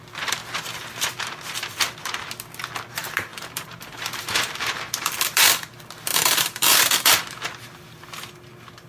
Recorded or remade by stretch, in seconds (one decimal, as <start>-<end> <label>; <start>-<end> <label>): 0.0-3.3 recorded; 3.3-5.1 remade; 5.1-6.1 recorded; 6.1-7.2 remade; 7.2-8.9 recorded